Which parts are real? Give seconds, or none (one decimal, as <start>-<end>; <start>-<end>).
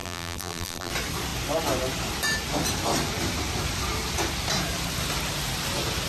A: 0.9-6.1